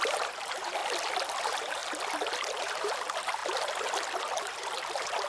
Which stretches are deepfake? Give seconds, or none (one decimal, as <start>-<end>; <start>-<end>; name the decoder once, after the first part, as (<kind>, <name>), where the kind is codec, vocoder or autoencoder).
0.0-0.8 (vocoder, BigVGAN v2); 1.4-1.8; 2.6-3.4; 4.4-5.3